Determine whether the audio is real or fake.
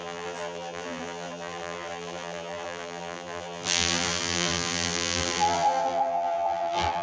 fake